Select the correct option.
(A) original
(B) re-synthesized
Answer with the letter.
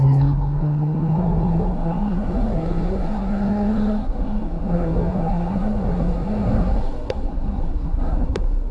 B